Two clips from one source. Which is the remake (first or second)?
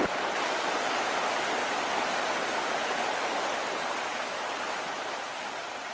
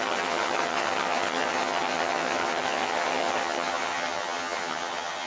second